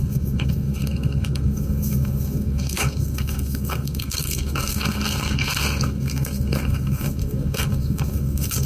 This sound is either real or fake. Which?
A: fake